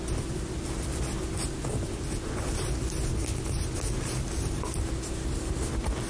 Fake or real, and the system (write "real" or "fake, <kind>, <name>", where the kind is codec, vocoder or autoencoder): real